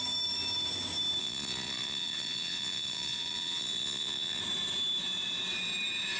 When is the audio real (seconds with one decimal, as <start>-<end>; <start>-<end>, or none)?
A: 0.0-1.2; 4.4-6.2